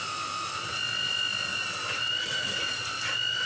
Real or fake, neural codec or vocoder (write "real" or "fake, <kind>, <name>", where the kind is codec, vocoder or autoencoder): real